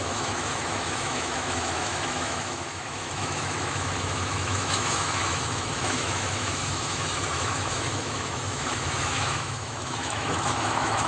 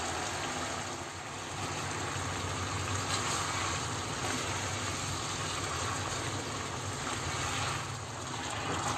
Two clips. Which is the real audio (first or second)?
second